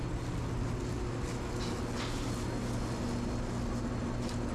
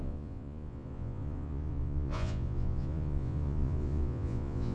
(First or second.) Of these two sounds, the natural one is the first